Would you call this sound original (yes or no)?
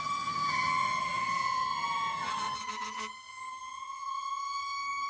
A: no